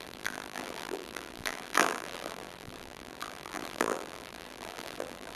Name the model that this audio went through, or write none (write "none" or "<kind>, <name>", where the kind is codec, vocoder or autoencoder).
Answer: vocoder, BigVGAN v2